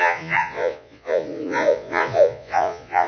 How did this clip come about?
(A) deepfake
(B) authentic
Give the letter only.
A